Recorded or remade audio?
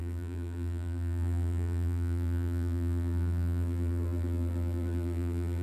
remade